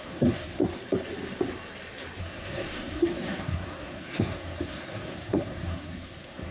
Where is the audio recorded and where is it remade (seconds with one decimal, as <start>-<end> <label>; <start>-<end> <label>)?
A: 0.0-0.6 remade; 0.6-2.2 recorded; 2.2-6.5 remade